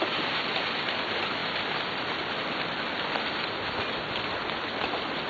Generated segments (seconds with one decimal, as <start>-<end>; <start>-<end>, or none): none